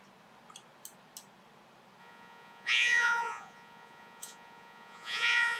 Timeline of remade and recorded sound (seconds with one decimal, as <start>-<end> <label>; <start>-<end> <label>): 0.0-2.0 recorded; 2.0-5.6 remade